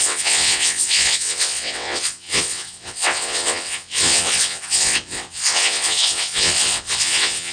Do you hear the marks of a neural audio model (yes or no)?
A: yes